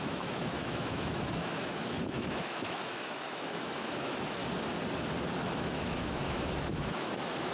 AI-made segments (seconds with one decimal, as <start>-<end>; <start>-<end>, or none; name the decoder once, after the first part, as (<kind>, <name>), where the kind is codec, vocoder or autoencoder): 0.0-4.4 (autoencoder, DAC-VAE); 5.6-7.5